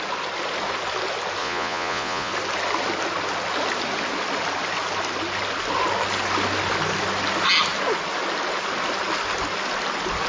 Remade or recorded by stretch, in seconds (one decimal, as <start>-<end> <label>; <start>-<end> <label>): 0.0-1.4 recorded; 1.4-2.3 remade; 2.3-10.3 recorded